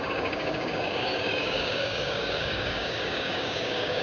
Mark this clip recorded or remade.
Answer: remade